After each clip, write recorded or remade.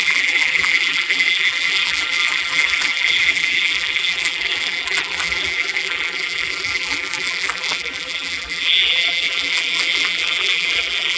remade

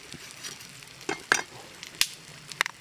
recorded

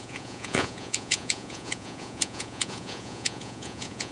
remade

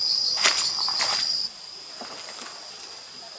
recorded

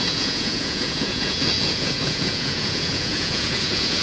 remade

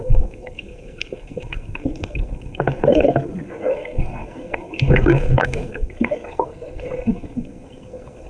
remade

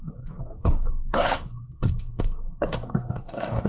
remade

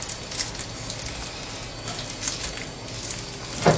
recorded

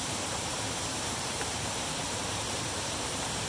remade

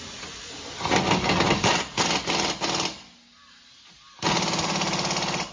recorded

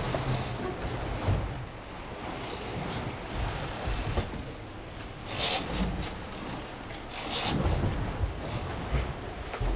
recorded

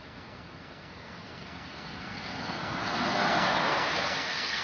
remade